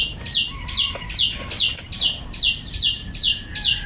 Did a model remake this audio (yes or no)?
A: no